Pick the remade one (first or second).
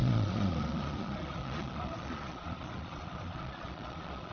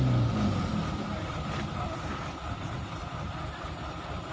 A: first